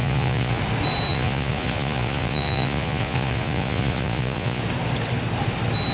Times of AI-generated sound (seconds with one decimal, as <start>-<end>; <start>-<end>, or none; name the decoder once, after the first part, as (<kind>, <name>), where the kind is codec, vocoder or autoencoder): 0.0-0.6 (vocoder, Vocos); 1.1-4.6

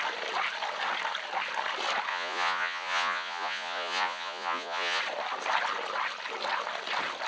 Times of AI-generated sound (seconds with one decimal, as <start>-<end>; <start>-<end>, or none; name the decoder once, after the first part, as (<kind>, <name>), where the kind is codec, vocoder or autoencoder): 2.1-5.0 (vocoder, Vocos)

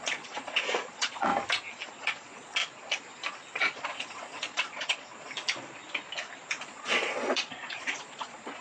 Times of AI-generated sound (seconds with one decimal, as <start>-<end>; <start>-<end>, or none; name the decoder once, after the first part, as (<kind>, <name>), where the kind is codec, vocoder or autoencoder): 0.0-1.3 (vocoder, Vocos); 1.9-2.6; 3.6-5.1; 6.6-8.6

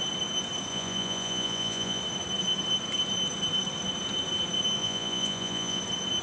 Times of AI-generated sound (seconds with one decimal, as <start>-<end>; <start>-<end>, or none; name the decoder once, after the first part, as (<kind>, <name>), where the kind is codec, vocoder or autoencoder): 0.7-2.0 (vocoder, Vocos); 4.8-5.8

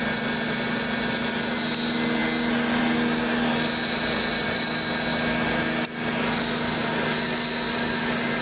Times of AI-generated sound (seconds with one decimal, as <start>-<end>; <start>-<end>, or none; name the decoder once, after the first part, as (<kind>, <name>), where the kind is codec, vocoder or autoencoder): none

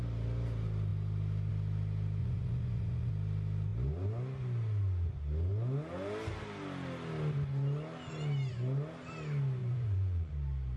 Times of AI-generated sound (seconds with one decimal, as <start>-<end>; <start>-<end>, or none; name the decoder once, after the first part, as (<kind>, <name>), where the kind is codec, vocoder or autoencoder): 2.2-3.1 (vocoder, Vocos); 9.6-10.3